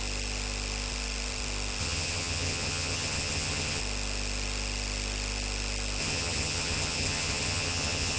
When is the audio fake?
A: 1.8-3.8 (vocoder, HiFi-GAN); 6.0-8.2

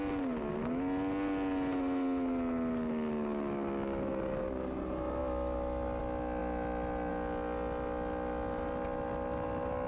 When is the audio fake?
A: none

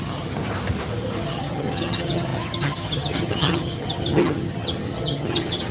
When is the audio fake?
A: 0.0-0.4 (vocoder, HiFi-GAN); 1.2-5.7

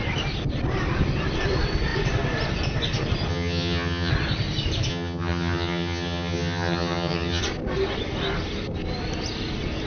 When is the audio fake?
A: 3.3-4.1 (vocoder, HiFi-GAN); 4.9-7.4

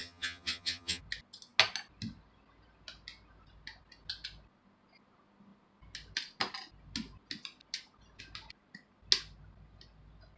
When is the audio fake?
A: 0.0-1.0 (vocoder, HiFi-GAN)

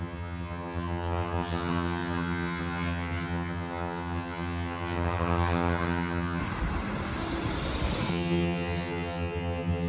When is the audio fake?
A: 0.0-6.4 (vocoder, HiFi-GAN); 8.1-9.9